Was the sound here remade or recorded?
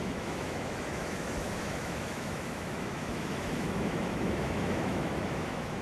remade